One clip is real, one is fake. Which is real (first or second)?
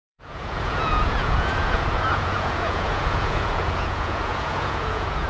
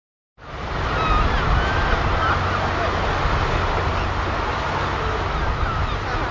second